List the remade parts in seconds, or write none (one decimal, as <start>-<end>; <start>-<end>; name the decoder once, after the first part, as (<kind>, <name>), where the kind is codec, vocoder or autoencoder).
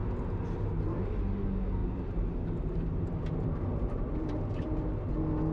1.8-5.1 (vocoder, BigVGAN v2)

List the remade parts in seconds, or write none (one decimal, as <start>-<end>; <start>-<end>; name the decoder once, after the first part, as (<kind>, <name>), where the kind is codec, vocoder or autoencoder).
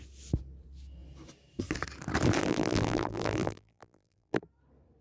2.4-4.4 (vocoder, BigVGAN v2)